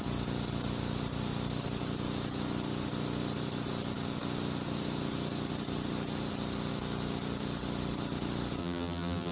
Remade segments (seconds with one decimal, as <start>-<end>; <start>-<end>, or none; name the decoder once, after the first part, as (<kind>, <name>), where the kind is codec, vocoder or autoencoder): 8.6-9.3 (vocoder, BigVGAN v2)